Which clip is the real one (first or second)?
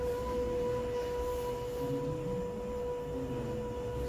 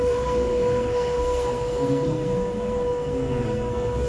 first